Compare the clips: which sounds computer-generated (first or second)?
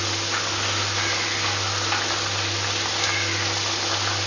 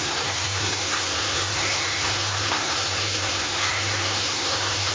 second